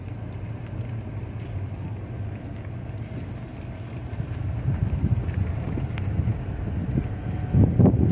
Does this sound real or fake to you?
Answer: real